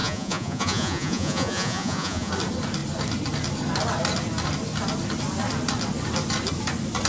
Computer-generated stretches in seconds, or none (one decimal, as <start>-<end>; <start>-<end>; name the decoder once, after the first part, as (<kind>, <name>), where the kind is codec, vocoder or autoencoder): 0.0-2.3 (vocoder, Vocos)